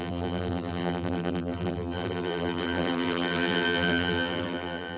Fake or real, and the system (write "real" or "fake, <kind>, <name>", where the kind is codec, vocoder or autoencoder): fake, vocoder, BigVGAN v2